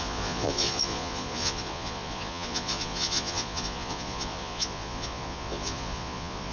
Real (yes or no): no